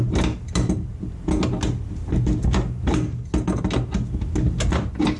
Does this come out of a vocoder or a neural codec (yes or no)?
no